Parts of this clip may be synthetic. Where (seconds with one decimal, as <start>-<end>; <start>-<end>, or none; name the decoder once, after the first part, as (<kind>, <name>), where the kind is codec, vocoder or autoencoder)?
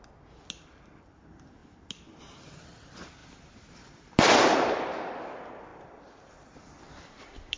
3.2-5.0 (vocoder, BigVGAN v2); 5.7-7.6